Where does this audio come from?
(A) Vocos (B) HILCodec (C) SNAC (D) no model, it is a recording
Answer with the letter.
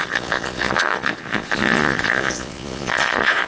A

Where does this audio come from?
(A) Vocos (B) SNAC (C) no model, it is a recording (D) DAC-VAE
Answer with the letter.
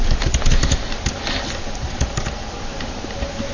C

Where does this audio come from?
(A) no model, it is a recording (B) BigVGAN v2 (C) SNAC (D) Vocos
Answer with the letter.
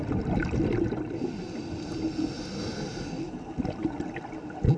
A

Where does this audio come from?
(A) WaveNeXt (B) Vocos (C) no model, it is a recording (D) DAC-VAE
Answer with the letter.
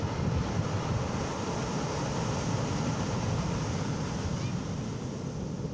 C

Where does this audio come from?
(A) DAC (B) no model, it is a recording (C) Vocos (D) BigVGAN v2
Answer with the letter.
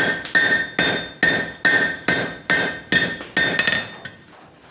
B